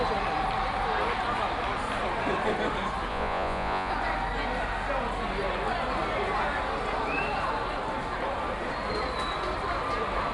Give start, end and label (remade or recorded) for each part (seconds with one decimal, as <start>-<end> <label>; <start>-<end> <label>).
0.0-3.1 recorded; 3.1-3.9 remade; 3.9-10.3 recorded